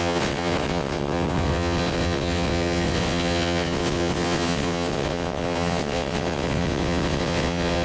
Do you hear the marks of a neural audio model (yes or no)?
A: yes